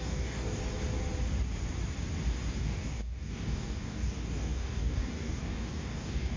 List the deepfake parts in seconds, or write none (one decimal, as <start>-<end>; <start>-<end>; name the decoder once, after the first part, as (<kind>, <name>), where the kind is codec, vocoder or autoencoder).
0.0-0.6 (codec, DAC); 2.6-6.4